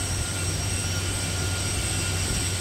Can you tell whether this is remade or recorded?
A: recorded